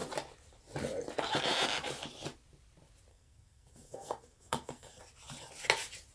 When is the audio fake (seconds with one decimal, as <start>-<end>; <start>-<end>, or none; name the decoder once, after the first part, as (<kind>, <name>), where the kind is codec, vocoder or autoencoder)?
3.1-5.0 (codec, SNAC)